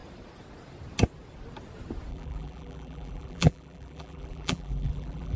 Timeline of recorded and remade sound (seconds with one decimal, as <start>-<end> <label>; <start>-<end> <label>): 0.0-2.1 recorded; 2.1-5.4 remade